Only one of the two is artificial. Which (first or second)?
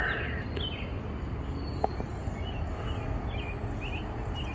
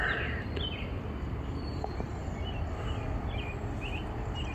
second